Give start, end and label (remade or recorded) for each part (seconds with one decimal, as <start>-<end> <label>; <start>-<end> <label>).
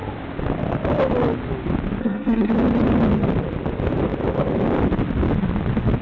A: 0.0-2.0 recorded; 2.0-2.5 remade; 2.5-6.0 recorded